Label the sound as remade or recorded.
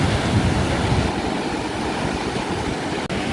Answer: recorded